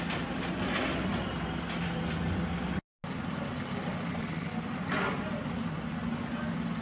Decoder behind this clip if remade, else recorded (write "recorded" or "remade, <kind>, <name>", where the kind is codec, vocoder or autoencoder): recorded